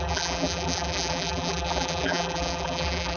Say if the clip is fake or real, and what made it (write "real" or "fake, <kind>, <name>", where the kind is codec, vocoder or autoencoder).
fake, vocoder, BigVGAN v2